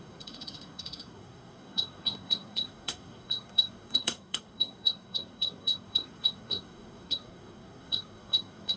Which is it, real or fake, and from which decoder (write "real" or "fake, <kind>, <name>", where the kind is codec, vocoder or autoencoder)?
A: fake, codec, SNAC